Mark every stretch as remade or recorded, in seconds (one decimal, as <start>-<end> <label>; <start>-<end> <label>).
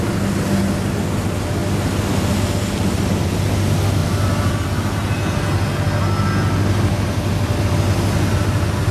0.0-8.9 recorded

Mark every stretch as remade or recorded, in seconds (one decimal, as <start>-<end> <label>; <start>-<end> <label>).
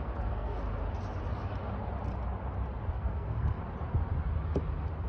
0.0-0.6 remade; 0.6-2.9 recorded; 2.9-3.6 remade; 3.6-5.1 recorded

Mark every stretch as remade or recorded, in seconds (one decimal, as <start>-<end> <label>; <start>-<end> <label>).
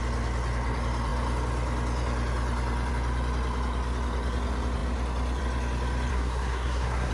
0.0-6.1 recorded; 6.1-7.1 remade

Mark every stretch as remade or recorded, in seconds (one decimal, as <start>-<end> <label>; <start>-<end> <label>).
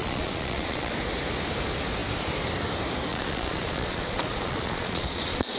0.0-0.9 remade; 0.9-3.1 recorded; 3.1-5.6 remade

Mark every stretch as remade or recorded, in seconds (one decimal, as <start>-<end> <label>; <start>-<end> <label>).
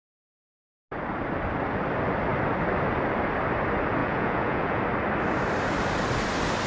0.0-4.0 recorded; 4.0-4.8 remade; 4.8-6.7 recorded